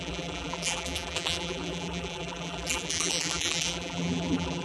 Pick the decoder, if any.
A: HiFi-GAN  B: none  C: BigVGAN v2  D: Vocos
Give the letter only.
C